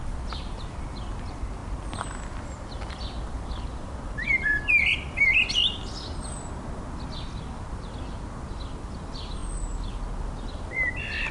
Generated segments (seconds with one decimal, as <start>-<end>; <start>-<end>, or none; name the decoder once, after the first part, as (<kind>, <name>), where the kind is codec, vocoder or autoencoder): none